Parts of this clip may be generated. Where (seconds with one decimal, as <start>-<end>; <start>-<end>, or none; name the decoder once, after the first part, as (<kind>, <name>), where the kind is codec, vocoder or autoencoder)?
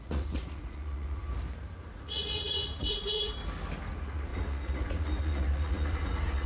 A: 0.0-1.3 (vocoder, Vocos); 1.9-3.4; 3.9-6.5